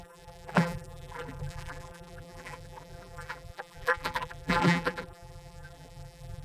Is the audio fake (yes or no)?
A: yes